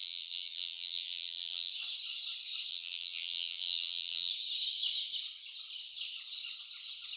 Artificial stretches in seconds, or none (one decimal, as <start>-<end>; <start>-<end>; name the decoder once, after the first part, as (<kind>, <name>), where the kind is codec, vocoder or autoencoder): 0.0-1.7 (vocoder, BigVGAN v2); 2.7-4.3